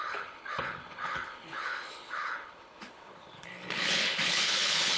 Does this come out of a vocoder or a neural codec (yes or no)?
yes